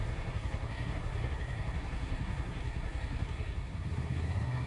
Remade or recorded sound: remade